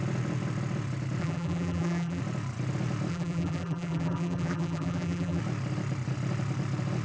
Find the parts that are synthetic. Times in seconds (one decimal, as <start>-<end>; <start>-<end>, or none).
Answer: 1.2-2.2; 3.1-5.4